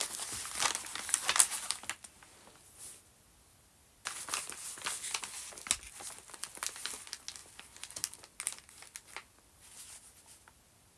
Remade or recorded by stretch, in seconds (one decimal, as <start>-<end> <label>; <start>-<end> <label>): 0.0-11.0 recorded